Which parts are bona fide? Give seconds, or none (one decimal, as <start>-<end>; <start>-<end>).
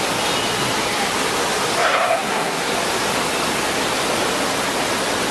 0.0-1.8; 2.7-5.3